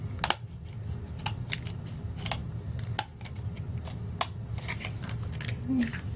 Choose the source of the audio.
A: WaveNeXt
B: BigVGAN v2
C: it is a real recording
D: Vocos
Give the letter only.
C